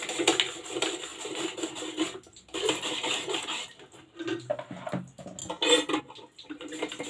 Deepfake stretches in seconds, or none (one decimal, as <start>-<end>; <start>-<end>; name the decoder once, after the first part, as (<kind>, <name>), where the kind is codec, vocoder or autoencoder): none